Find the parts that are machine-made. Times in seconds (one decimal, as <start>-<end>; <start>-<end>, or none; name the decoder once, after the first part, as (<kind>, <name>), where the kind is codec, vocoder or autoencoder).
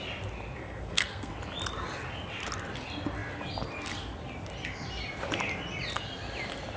0.6-1.3 (codec, SNAC)